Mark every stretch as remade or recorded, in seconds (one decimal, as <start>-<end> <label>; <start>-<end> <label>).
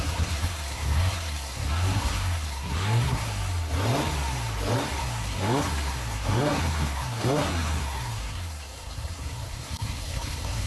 0.0-3.4 remade; 3.4-5.0 recorded; 5.0-10.7 remade